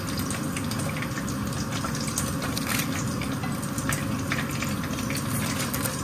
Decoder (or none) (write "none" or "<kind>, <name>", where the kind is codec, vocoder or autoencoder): none